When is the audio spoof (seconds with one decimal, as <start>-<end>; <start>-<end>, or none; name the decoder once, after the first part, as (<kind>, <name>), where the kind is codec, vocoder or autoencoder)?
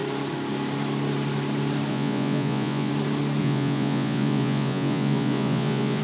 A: 1.9-2.9 (vocoder, Vocos); 3.4-6.0